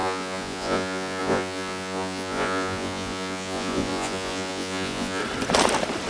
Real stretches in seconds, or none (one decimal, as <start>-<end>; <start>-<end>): 5.2-6.1